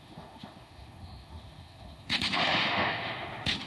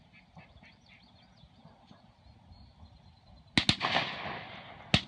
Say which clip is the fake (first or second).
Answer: first